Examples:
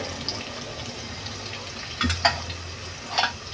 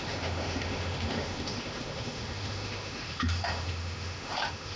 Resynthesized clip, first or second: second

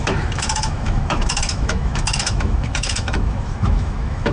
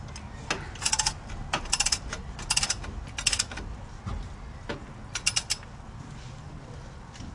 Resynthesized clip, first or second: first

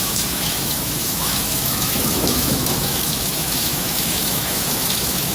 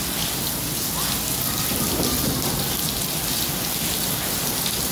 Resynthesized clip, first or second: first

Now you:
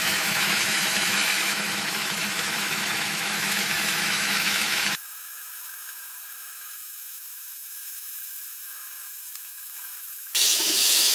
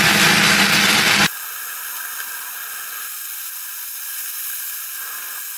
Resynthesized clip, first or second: first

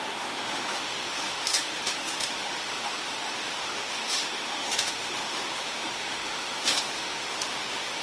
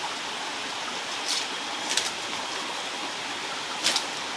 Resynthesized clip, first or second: first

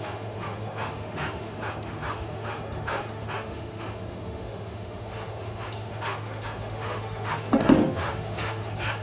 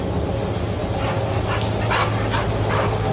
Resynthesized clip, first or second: first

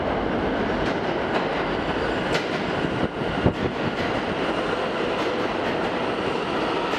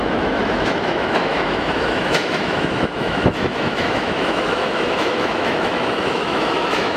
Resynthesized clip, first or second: second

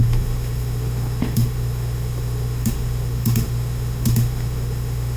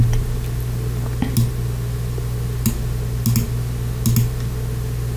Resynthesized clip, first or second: first